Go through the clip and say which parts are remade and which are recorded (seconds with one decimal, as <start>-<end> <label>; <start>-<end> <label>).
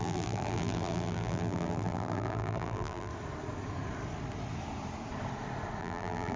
0.0-3.1 remade; 3.1-5.8 recorded; 5.8-6.4 remade